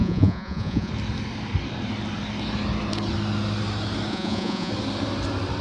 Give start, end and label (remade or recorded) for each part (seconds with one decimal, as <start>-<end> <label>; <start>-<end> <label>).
0.0-0.9 remade; 0.9-4.1 recorded; 4.1-4.7 remade; 4.7-5.6 recorded